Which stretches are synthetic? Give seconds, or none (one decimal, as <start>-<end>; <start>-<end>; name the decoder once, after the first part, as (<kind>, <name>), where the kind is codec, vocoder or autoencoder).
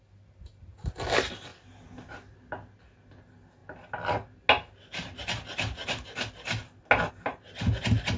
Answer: none